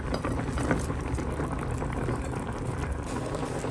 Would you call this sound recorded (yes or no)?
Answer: yes